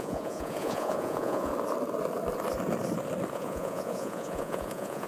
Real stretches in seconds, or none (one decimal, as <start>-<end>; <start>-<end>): 1.5-3.3